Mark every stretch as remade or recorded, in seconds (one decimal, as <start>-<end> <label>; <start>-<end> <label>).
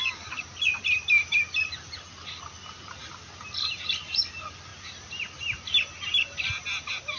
0.0-4.7 remade; 4.7-7.2 recorded